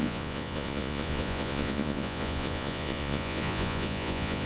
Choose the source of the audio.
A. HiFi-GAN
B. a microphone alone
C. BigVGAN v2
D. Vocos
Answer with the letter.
D